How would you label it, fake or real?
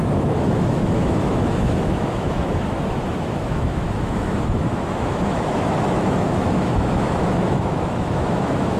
fake